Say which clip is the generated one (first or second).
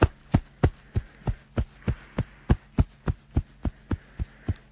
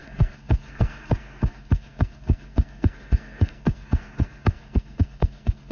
second